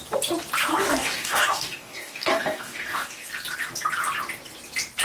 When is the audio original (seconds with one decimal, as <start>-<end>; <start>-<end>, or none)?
0.0-0.7; 3.3-5.0